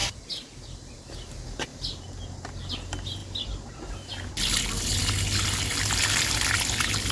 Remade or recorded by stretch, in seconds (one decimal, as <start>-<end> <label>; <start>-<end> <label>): 0.0-1.1 remade; 1.1-1.7 recorded; 1.7-2.2 remade; 2.2-7.1 recorded